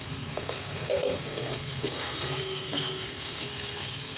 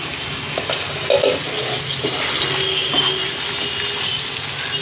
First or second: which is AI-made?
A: first